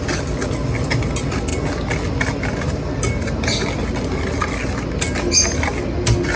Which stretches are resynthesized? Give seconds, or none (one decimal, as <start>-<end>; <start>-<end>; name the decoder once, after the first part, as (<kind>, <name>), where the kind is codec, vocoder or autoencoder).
none